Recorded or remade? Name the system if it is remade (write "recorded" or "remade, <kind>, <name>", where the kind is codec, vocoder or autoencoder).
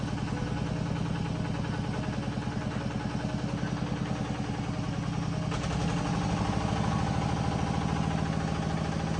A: recorded